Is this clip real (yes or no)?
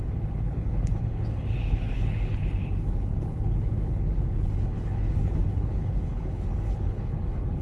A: no